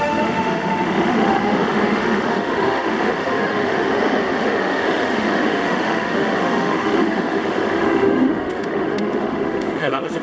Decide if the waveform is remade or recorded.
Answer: remade